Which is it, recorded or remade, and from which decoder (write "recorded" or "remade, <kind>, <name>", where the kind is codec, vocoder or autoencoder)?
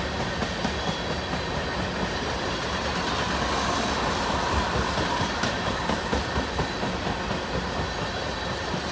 recorded